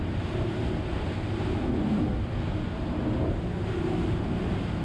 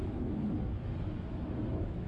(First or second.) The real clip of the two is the first